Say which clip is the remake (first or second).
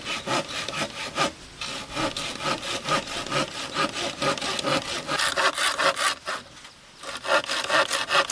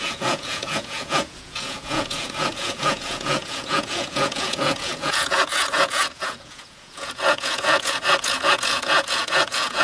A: second